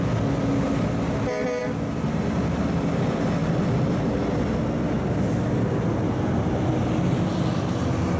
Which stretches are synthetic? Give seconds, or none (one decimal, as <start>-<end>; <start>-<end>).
3.4-4.2